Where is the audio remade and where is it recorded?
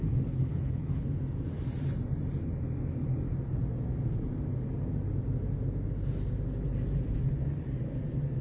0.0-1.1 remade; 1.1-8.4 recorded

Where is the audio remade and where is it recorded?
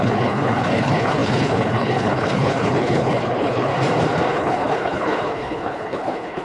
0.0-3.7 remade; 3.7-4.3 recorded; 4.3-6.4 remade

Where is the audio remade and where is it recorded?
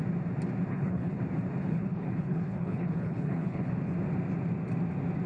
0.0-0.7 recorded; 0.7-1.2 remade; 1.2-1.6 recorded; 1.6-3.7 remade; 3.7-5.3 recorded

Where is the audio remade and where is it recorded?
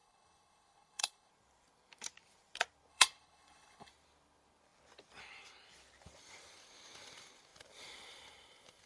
0.0-1.3 remade; 1.3-2.9 recorded; 2.9-3.9 remade; 3.9-8.9 recorded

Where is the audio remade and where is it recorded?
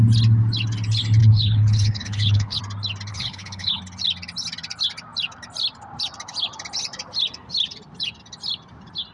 0.0-1.2 recorded; 1.2-2.6 remade; 2.6-3.1 recorded; 3.1-3.8 remade; 3.8-9.1 recorded